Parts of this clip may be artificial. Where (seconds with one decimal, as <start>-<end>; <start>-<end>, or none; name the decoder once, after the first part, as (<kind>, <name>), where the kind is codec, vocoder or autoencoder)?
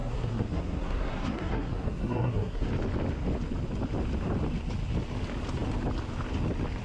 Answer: 0.0-2.7 (codec, SNAC)